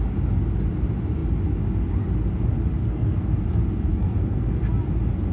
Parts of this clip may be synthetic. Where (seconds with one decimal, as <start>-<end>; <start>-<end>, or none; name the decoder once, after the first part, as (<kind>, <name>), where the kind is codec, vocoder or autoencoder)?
2.8-3.4 (codec, SNAC); 3.9-4.6